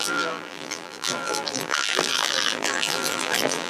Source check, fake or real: fake